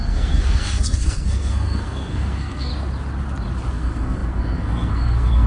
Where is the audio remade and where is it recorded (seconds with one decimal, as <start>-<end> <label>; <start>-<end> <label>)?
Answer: 0.0-2.7 remade; 2.7-3.7 recorded; 3.7-5.5 remade